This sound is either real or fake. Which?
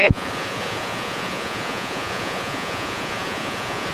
fake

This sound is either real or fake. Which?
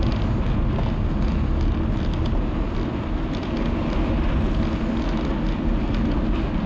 real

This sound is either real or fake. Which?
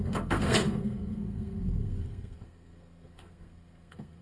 fake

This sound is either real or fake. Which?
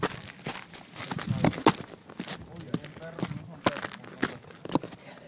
real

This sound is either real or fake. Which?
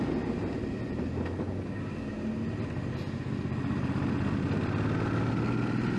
real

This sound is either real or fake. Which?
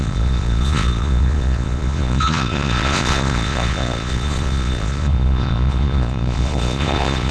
fake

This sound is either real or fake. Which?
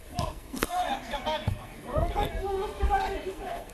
fake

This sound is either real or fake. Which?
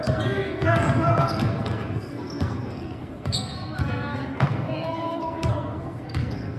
fake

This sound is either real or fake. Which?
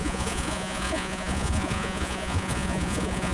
fake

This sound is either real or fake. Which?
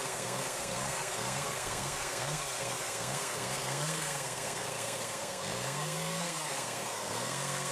fake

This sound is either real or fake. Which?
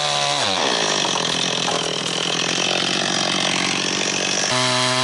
real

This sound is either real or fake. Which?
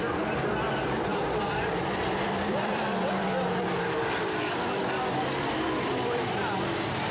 fake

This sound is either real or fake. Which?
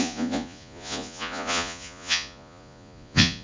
fake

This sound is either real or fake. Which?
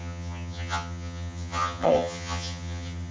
fake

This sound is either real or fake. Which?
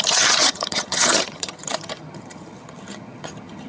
fake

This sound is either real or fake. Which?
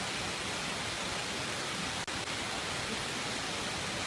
real